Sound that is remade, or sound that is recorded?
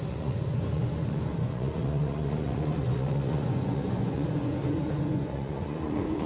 remade